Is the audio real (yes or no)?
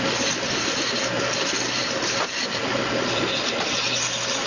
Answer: yes